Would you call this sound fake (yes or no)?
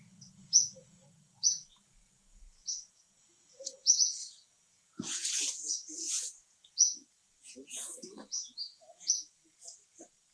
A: yes